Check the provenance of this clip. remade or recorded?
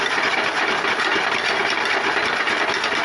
recorded